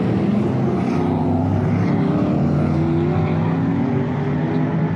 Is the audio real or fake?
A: real